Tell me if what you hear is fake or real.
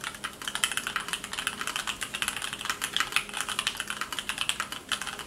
real